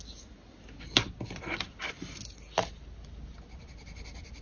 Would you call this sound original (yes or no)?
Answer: yes